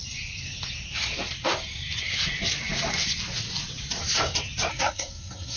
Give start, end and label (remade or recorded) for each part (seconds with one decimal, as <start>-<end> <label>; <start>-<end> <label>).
0.0-4.7 recorded; 4.7-5.6 remade